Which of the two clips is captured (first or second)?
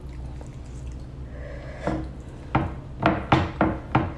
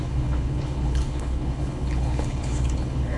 first